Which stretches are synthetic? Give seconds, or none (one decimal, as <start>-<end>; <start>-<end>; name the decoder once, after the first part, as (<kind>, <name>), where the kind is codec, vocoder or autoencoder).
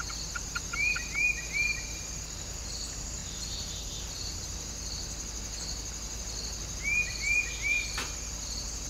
none